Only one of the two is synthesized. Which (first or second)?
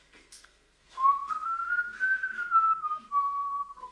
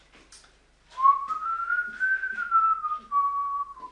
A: first